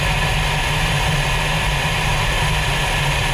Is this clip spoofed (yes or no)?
no